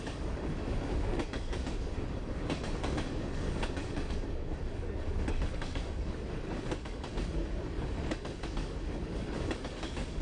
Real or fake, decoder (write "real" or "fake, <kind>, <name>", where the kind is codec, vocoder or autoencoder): fake, codec, DAC